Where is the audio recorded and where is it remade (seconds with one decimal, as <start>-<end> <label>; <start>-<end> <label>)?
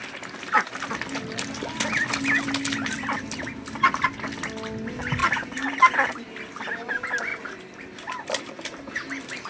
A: 0.0-9.5 recorded